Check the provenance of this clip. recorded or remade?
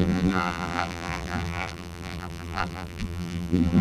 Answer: remade